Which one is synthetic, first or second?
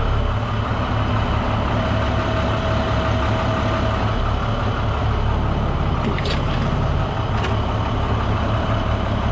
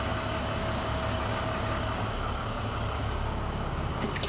second